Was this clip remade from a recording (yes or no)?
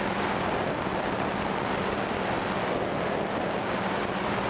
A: no